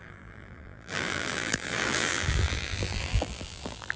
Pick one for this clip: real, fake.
fake